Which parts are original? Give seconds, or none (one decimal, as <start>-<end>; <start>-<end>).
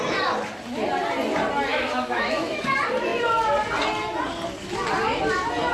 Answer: 0.0-1.7; 2.6-5.7